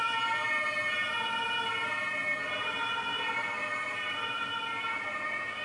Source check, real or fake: real